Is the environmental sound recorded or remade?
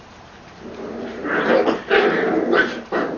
remade